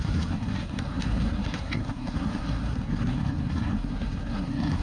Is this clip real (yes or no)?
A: no